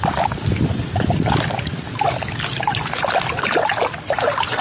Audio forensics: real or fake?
real